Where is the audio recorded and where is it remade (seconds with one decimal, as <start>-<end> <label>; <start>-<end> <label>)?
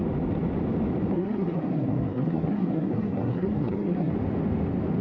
0.0-1.1 recorded; 1.1-4.1 remade; 4.1-5.0 recorded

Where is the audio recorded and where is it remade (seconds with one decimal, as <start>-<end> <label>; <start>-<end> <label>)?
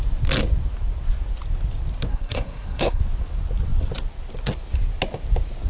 0.0-2.1 recorded; 2.1-3.0 remade; 3.0-5.7 recorded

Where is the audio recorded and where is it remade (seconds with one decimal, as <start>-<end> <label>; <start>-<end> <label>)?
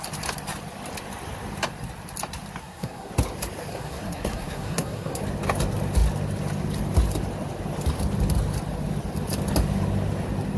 0.0-2.6 recorded; 2.6-3.1 remade; 3.1-3.7 recorded; 3.7-5.2 remade; 5.2-10.6 recorded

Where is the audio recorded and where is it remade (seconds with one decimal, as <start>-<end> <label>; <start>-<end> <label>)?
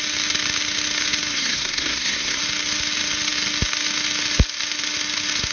0.0-1.3 recorded; 1.3-2.4 remade; 2.4-5.5 recorded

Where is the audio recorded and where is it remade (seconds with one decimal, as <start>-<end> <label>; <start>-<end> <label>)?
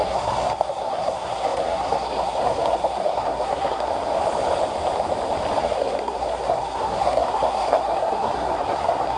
0.0-3.9 remade; 3.9-5.6 recorded; 5.6-9.2 remade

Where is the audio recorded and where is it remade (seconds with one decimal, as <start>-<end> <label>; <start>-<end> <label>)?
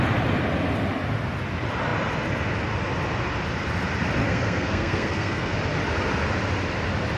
0.0-4.2 recorded; 4.2-5.5 remade; 5.5-7.2 recorded